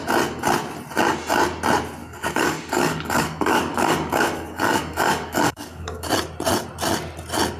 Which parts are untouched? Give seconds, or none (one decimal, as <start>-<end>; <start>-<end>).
0.0-2.0; 6.1-7.6